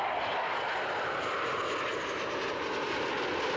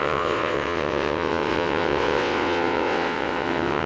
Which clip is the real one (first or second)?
first